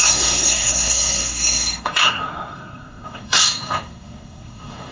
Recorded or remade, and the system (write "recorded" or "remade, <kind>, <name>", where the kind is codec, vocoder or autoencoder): remade, codec, SNAC